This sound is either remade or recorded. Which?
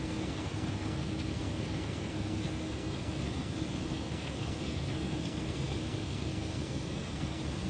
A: remade